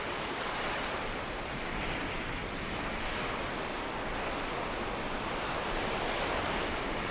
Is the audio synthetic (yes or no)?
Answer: no